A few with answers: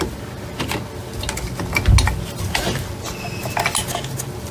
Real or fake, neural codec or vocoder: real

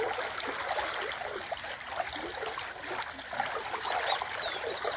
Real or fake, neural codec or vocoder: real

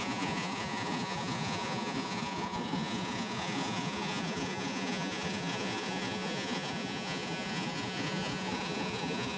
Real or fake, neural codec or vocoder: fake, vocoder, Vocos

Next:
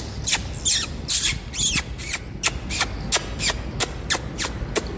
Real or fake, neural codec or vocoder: real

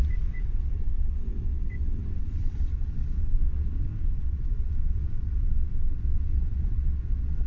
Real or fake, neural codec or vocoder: fake, vocoder, WaveNeXt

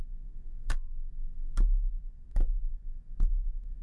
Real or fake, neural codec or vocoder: real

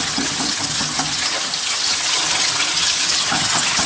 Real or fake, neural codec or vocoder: fake, vocoder, HiFi-GAN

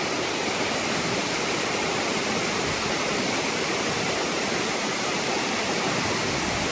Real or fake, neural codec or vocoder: real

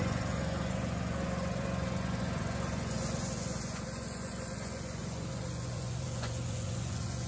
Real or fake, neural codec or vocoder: fake, vocoder, Vocos